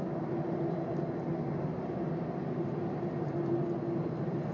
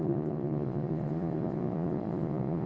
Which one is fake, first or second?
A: second